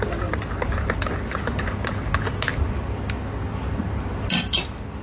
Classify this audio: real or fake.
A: real